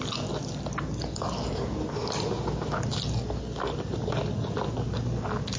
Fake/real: real